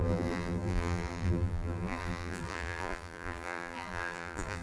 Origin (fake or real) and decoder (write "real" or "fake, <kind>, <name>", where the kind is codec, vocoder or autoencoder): fake, vocoder, BigVGAN v2